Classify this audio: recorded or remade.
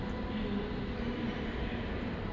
recorded